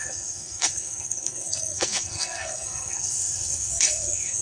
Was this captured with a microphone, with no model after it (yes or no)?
no